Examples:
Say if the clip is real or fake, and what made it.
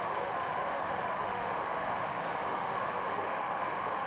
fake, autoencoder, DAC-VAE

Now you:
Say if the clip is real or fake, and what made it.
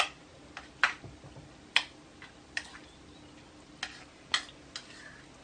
real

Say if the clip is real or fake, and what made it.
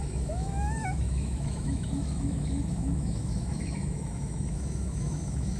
fake, autoencoder, DAC-VAE